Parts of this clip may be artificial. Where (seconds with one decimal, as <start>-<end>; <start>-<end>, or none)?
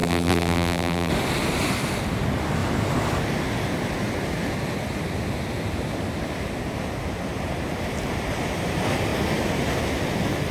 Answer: 0.0-1.1